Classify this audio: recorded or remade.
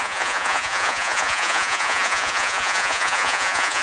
remade